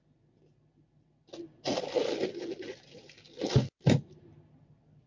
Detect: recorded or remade recorded